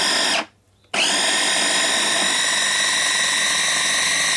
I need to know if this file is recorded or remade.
recorded